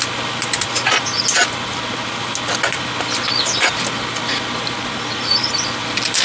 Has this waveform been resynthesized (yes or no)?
no